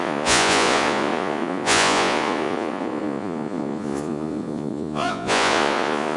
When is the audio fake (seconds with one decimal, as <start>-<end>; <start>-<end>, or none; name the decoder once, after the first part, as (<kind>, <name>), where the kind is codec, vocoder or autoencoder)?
0.0-6.2 (vocoder, Vocos)